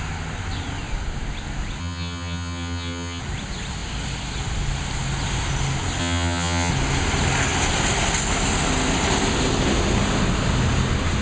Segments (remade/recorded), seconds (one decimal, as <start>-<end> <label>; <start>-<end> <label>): 0.0-1.8 recorded; 1.8-3.2 remade; 3.2-6.0 recorded; 6.0-6.7 remade; 6.7-11.2 recorded